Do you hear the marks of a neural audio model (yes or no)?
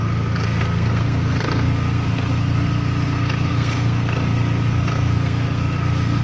yes